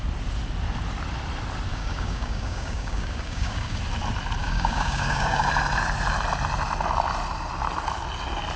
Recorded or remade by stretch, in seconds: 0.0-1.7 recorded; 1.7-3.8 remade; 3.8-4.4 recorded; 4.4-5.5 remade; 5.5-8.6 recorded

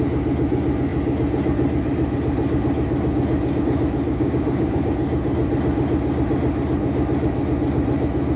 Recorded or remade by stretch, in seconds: 0.0-4.1 recorded; 4.1-4.9 remade; 4.9-8.4 recorded

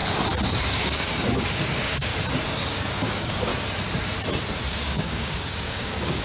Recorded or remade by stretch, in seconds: 0.0-0.5 recorded; 0.5-2.1 remade; 2.1-2.7 recorded; 2.7-3.5 remade; 3.5-4.7 recorded; 4.7-6.2 remade

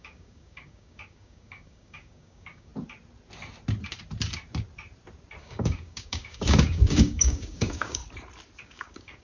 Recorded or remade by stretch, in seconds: 0.0-2.7 remade; 2.7-5.4 recorded; 5.4-8.0 remade; 8.0-8.6 recorded; 8.6-9.2 remade

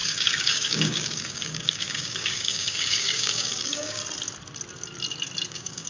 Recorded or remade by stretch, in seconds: 0.0-4.0 remade; 4.0-5.5 recorded; 5.5-5.9 remade

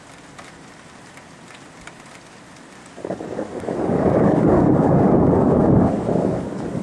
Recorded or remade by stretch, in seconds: 0.0-2.8 recorded; 2.8-6.8 remade

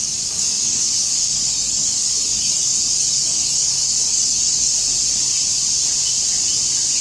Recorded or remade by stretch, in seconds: 0.0-4.7 remade; 4.7-7.0 recorded